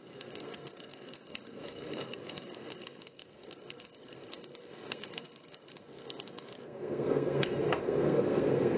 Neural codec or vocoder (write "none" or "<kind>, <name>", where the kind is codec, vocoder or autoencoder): codec, SNAC